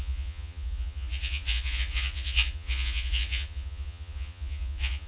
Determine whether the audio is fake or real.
fake